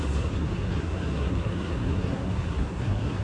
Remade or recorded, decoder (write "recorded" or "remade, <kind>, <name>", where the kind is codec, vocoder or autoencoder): remade, codec, SNAC